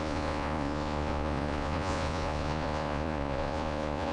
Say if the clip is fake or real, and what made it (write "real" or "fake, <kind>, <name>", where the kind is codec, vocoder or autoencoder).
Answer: fake, vocoder, Vocos